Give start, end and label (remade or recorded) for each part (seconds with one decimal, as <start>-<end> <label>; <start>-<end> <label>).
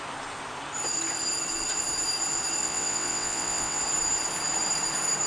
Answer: 0.0-2.6 recorded; 2.6-3.8 remade; 3.8-5.3 recorded